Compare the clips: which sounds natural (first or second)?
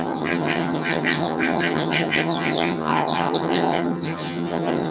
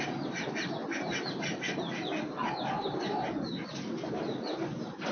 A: second